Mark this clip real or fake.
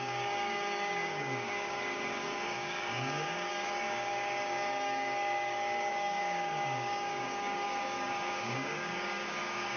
fake